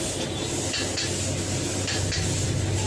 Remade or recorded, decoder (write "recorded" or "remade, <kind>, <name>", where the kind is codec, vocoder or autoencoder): recorded